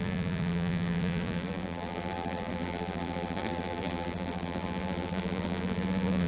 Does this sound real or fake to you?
fake